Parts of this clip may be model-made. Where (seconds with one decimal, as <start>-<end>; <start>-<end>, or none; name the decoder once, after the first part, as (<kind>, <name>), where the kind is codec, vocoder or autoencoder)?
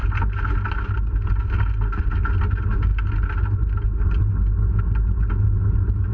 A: none